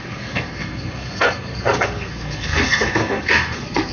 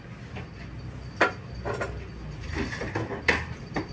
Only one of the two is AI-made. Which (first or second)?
first